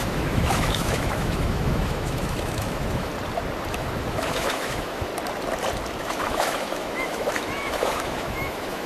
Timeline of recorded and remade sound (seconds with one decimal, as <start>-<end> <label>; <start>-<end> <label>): 0.0-3.1 remade; 3.1-3.7 recorded; 3.7-5.1 remade; 5.1-6.0 recorded; 6.0-8.9 remade